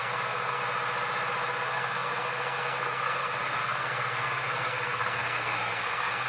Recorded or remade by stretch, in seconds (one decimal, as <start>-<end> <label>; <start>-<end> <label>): 0.0-0.6 remade; 0.6-1.5 recorded; 1.5-6.3 remade